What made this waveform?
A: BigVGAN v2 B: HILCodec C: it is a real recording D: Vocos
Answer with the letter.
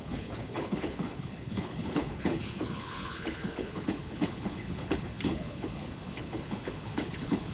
B